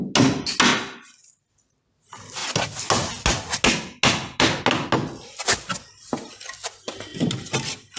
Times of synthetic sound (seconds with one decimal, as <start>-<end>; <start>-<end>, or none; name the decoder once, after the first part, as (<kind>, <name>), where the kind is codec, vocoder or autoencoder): none